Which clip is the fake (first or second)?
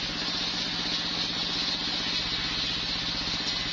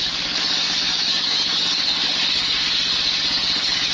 second